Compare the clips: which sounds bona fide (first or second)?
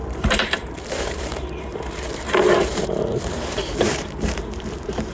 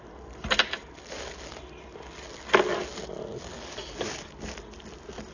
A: second